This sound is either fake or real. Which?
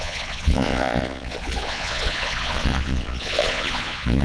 fake